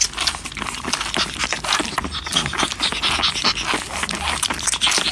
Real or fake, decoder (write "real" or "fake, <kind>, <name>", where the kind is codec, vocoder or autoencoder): real